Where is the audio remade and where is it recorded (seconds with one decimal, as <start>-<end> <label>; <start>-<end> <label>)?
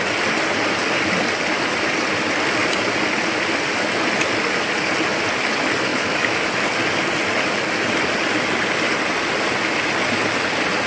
0.0-5.9 recorded; 5.9-6.5 remade; 6.5-10.9 recorded